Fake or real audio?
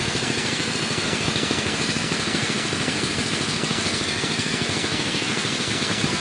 fake